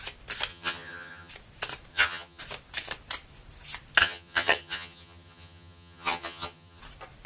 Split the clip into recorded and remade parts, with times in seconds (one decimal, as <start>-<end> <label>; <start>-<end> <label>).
0.0-0.5 recorded; 0.5-1.3 remade; 1.3-1.9 recorded; 1.9-2.4 remade; 2.4-4.0 recorded; 4.0-6.8 remade; 6.8-7.3 recorded